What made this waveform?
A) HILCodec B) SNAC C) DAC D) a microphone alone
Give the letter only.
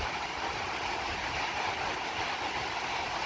D